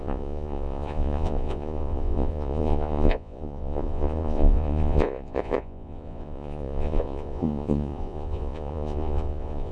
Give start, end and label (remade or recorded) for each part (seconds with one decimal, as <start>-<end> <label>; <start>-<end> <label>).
0.0-9.7 remade